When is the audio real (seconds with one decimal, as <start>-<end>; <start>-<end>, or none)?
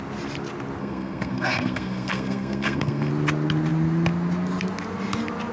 0.0-0.8; 3.1-5.5